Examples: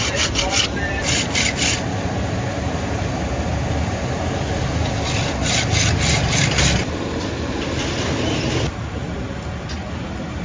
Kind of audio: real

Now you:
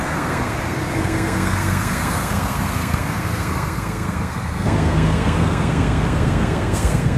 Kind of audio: fake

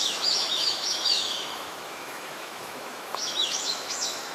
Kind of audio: fake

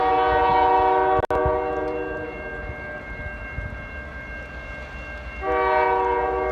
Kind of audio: real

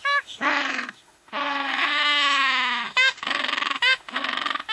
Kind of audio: fake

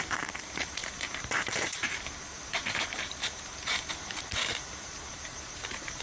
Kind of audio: fake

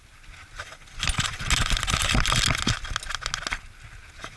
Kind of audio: real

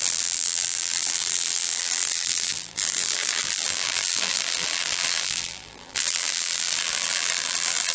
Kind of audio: fake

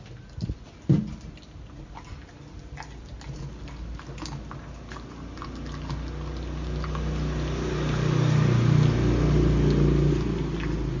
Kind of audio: real